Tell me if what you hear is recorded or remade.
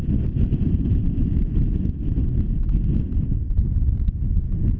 remade